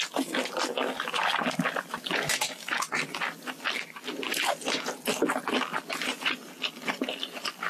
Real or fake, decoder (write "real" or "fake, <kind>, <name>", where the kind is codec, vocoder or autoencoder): real